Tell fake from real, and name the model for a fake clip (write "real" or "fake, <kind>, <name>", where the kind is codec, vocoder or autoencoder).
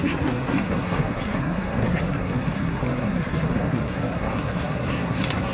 fake, codec, SNAC